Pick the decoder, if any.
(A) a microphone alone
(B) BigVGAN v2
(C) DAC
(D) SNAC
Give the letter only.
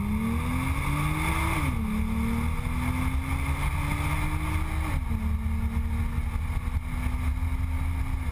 A